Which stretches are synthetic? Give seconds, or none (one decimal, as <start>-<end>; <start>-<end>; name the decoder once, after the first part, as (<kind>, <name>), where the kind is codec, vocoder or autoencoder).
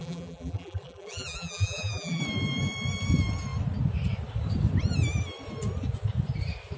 0.0-2.2 (vocoder, BigVGAN v2)